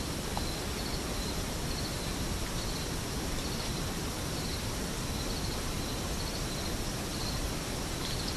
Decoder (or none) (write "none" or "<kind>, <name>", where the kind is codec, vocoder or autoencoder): none